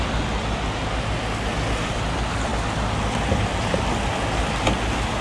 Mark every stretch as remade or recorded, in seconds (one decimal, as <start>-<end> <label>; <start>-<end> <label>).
0.0-5.2 recorded